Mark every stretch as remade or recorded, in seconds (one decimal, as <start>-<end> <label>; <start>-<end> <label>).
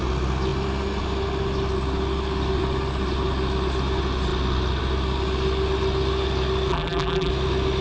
0.0-6.7 recorded; 6.7-7.3 remade; 7.3-7.8 recorded